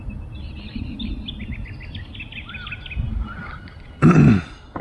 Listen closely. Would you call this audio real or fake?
real